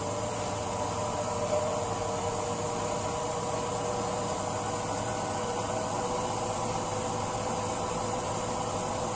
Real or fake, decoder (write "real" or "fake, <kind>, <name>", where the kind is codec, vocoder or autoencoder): real